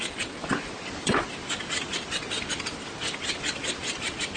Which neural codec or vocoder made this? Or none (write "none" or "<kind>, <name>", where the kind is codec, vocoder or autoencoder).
none